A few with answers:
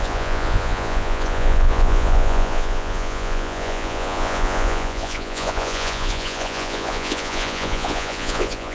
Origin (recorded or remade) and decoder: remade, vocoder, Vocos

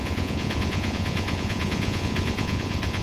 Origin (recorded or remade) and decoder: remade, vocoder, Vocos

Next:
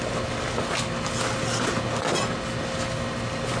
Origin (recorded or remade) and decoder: recorded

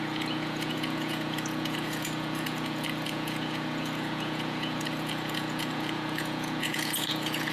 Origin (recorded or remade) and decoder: remade, vocoder, Vocos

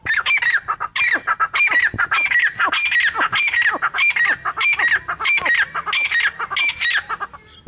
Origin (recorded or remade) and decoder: recorded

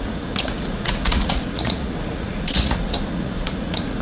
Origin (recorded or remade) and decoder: remade, vocoder, Vocos